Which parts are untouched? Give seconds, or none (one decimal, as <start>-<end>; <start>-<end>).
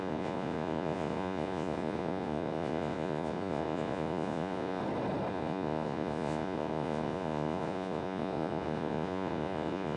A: 4.8-5.3